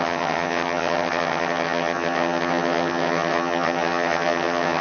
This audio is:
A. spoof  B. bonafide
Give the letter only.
A